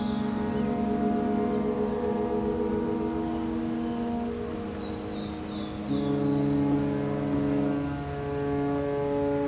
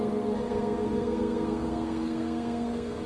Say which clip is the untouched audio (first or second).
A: first